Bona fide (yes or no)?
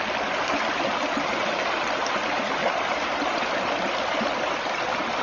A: yes